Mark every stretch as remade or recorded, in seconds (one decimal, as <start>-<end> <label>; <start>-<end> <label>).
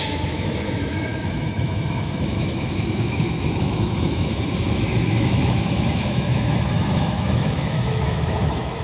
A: 0.0-8.8 remade